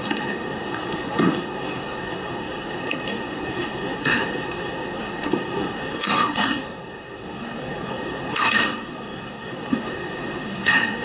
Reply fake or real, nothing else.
fake